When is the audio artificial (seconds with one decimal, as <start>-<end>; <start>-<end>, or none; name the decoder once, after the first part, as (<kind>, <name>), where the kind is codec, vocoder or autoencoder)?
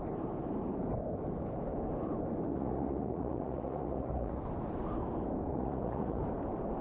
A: 2.5-4.4 (vocoder, Vocos); 5.5-6.2